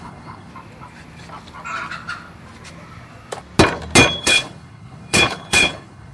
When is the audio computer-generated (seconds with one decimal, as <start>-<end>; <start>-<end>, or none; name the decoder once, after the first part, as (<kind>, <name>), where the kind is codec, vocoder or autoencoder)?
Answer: 0.0-0.5 (codec, HILCodec); 4.2-6.1